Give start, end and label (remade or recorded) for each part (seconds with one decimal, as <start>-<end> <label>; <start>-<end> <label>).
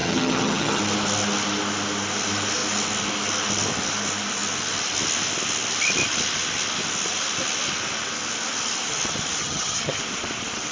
0.0-0.8 remade; 0.8-9.4 recorded; 9.4-10.0 remade; 10.0-10.7 recorded